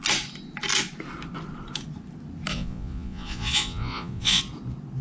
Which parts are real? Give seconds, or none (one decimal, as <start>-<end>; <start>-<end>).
0.0-2.5; 4.4-5.0